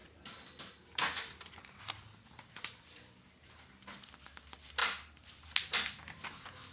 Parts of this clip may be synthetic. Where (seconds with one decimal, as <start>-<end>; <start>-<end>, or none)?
0.0-3.5